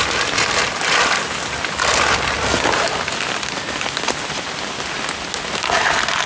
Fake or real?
real